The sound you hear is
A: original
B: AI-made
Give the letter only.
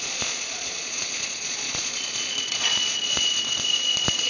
B